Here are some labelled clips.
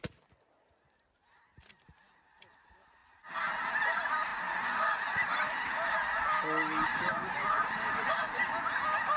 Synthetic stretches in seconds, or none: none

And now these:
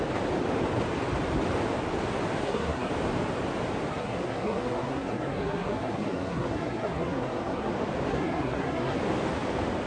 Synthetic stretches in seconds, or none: 2.4-2.9; 3.9-7.7; 8.1-9.0

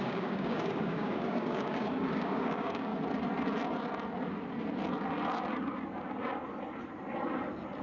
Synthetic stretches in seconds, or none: 0.0-2.9

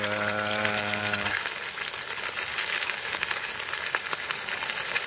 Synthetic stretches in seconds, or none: 0.7-1.6; 2.5-3.5

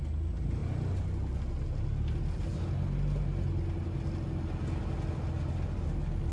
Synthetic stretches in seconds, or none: none

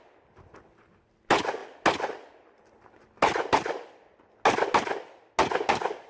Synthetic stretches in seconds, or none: none